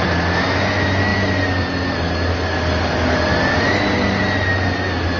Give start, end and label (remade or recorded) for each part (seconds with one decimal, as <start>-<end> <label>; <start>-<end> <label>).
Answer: 0.0-5.2 recorded